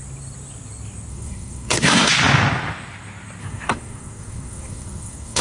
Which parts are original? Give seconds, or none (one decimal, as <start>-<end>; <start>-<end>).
0.0-1.1; 2.1-3.4